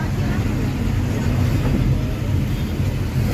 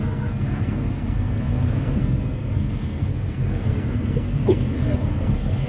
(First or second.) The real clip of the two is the first